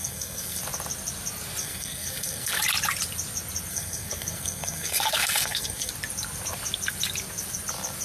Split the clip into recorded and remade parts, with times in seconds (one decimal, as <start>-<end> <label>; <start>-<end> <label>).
0.0-0.6 remade; 0.6-1.6 recorded; 1.6-2.6 remade; 2.6-3.7 recorded; 3.7-5.9 remade; 5.9-8.0 recorded